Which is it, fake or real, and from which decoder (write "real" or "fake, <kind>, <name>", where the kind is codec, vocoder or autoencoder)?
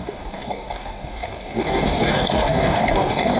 fake, codec, DAC